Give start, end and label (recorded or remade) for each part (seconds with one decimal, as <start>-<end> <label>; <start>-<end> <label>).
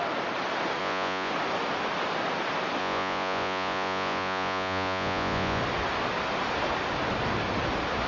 0.0-0.8 recorded; 0.8-1.3 remade; 1.3-2.8 recorded; 2.8-5.6 remade; 5.6-8.1 recorded